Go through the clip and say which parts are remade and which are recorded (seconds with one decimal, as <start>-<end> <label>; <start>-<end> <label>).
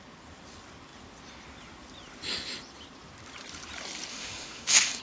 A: 0.0-4.1 recorded; 4.1-5.0 remade